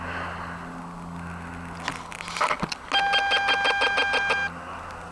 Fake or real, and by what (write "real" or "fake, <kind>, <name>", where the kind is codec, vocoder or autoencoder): real